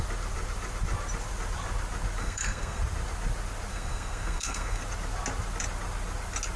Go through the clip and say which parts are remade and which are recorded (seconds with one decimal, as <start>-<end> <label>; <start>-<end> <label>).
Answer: 0.0-2.2 recorded; 2.2-2.8 remade; 2.8-3.7 recorded; 3.7-4.8 remade; 4.8-6.6 recorded